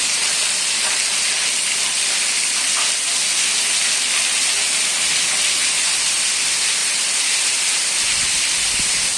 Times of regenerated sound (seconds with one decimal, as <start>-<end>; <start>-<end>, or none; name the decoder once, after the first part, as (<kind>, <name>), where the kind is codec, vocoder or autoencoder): 6.8-7.6 (vocoder, BigVGAN v2)